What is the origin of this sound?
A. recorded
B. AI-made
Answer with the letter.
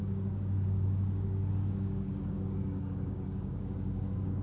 B